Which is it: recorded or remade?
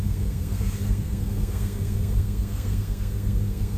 remade